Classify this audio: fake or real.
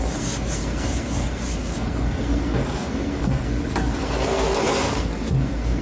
fake